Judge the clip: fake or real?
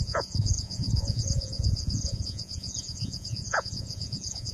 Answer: fake